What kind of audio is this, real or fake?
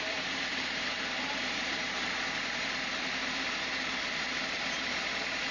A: fake